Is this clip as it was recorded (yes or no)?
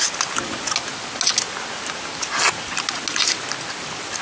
yes